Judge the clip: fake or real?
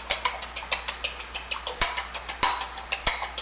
real